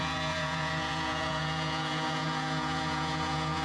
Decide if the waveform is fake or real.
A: fake